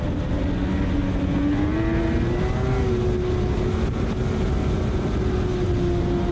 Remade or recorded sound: recorded